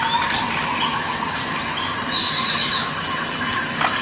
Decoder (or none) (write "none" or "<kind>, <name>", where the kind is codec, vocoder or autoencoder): none